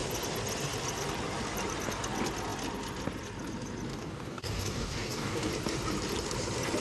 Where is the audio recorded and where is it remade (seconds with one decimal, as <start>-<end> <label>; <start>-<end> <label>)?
0.0-3.9 recorded; 3.9-5.5 remade; 5.5-6.8 recorded